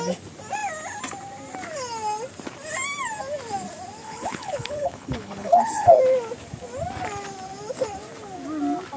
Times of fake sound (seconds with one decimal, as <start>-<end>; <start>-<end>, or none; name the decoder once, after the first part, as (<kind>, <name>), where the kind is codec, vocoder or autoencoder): 4.0-6.0 (codec, HILCodec)